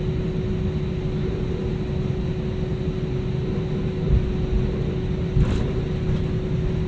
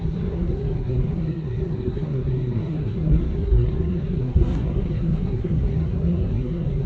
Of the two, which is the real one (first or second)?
first